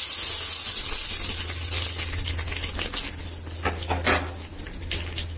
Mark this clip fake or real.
real